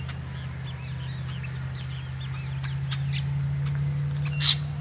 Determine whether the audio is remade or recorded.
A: recorded